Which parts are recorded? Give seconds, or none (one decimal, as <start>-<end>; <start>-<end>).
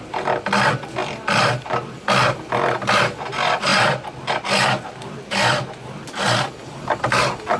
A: 3.7-6.6